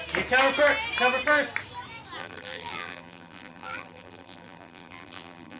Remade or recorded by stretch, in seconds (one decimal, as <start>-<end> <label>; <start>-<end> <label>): 0.0-2.2 recorded; 2.2-5.6 remade